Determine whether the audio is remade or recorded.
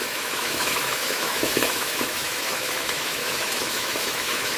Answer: remade